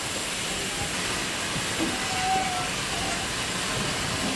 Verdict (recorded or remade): recorded